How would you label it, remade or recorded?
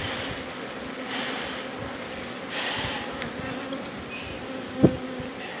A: recorded